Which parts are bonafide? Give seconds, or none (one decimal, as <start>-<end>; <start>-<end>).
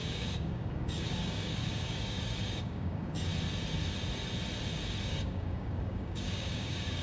3.3-5.0